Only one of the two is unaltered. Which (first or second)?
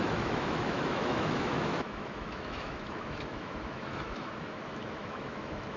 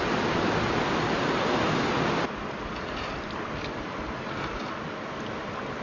second